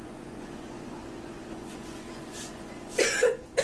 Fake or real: fake